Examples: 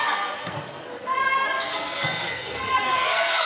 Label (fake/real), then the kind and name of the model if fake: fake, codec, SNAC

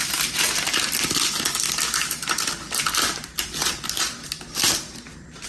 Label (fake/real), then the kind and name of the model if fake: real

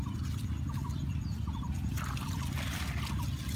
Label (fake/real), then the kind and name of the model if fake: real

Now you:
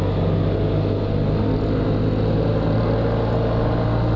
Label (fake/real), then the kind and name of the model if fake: real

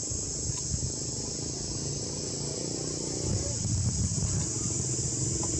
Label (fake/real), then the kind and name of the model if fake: real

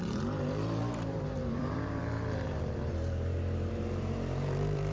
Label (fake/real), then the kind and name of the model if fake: fake, vocoder, BigVGAN v2